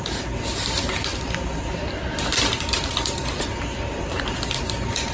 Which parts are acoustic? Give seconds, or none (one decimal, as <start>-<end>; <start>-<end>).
none